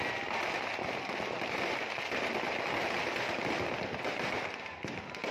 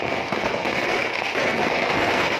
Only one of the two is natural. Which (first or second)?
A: first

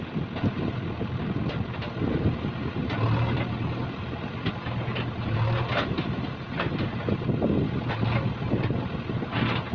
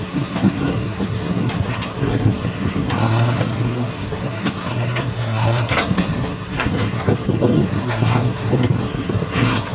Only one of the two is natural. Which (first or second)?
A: first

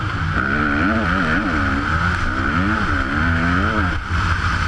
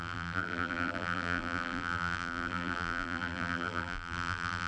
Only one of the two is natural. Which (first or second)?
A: first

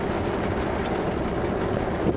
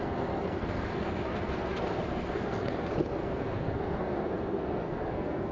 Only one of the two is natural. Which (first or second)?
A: first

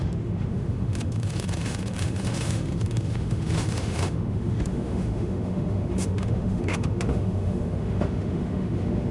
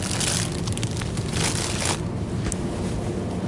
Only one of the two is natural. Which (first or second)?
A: second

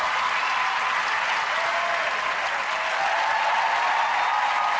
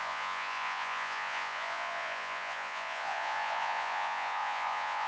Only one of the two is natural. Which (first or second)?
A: first